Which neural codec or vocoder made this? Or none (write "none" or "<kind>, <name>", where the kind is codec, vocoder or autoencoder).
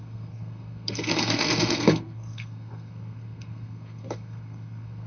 codec, SNAC